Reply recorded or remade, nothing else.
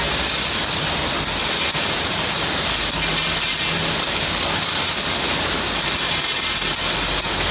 recorded